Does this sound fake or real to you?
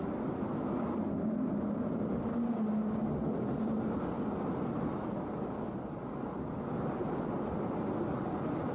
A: real